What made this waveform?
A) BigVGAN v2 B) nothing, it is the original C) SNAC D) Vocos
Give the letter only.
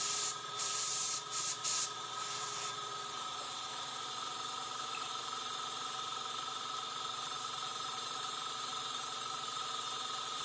A